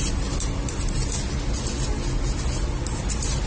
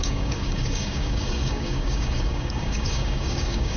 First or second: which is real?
first